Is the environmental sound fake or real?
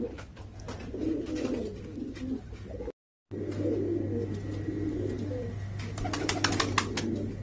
real